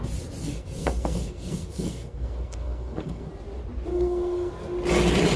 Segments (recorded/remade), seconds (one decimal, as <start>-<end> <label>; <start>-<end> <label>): 0.0-0.4 recorded; 0.4-3.3 remade; 3.3-3.9 recorded; 3.9-4.5 remade; 4.5-5.4 recorded